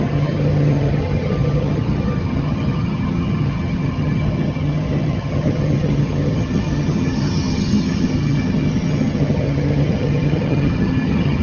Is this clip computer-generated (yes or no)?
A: yes